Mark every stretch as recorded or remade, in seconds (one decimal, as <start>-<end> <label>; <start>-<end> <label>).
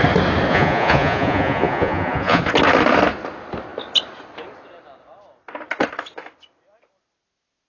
0.0-0.5 recorded; 0.5-2.4 remade; 2.4-7.7 recorded